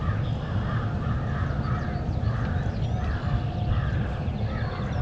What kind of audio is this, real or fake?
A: real